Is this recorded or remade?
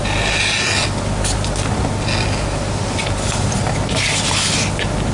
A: recorded